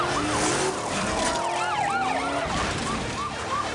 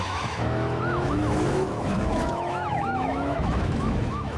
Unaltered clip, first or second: first